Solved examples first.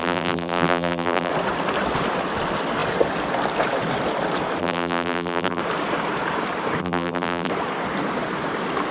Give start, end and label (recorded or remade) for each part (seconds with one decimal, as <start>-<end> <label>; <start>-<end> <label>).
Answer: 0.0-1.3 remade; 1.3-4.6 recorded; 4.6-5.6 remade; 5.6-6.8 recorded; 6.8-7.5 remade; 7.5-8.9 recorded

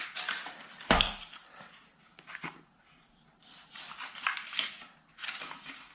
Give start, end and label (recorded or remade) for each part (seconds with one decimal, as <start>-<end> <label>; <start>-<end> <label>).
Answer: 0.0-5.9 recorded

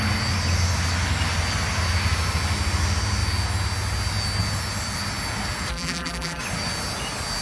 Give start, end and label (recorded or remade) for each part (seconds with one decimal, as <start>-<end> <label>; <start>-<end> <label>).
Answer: 0.0-5.7 recorded; 5.7-6.4 remade; 6.4-7.4 recorded